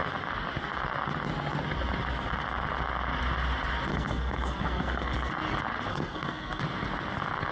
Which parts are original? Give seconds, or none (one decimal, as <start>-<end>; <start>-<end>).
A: 0.0-3.9; 5.3-5.9; 6.6-7.5